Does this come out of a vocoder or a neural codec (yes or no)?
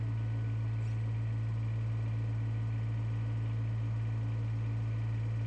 no